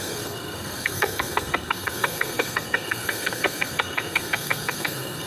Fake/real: fake